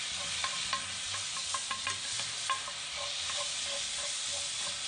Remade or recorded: recorded